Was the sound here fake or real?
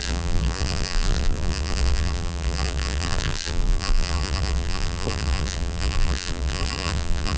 fake